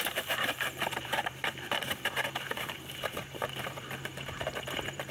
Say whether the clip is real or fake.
fake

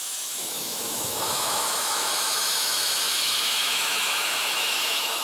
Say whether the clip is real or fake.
fake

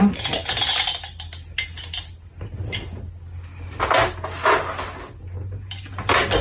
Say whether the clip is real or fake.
real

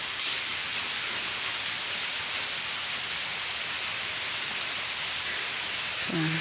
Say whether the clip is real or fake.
real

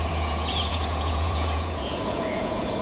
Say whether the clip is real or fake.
fake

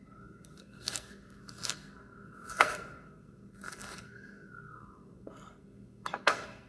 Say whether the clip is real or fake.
fake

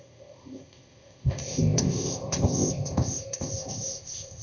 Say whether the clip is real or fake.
fake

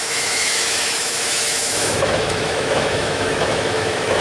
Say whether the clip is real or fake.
fake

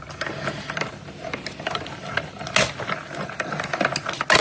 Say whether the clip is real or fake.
real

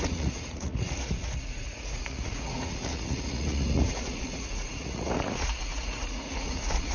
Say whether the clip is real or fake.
fake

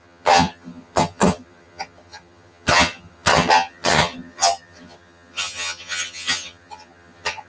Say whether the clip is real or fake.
fake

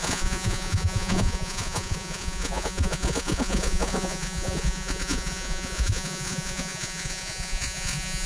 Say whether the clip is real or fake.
fake